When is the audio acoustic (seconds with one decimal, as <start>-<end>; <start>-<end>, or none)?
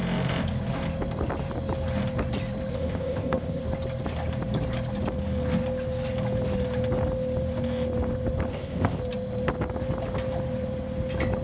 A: 0.0-2.7; 3.6-8.5; 9.0-11.4